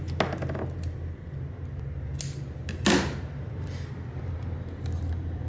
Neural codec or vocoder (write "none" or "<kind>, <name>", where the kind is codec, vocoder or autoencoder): none